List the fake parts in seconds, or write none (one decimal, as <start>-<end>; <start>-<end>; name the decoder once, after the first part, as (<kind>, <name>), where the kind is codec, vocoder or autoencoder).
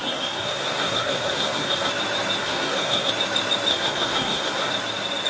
0.0-1.9 (codec, SNAC); 2.4-3.1; 3.7-4.7